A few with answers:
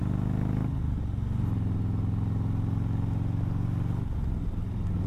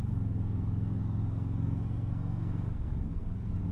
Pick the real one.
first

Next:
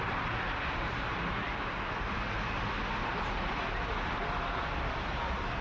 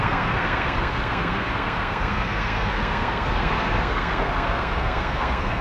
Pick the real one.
first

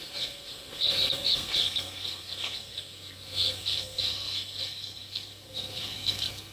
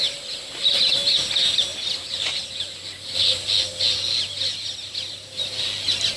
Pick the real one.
second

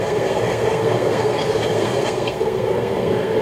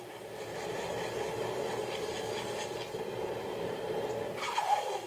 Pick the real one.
second